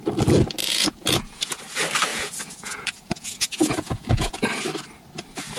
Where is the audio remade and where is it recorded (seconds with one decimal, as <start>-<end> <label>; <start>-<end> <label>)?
0.0-0.6 recorded; 0.6-1.6 remade; 1.6-2.1 recorded; 2.1-4.3 remade; 4.3-5.6 recorded